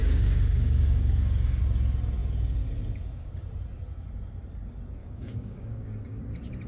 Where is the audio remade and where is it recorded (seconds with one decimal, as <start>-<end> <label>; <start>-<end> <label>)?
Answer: 0.0-1.6 remade; 1.6-5.0 recorded; 5.0-6.2 remade; 6.2-6.7 recorded